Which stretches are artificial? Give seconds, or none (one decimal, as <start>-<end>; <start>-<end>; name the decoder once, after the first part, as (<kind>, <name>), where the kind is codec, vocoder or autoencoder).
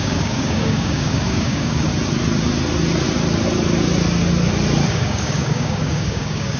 0.0-1.9 (codec, DAC); 4.9-6.6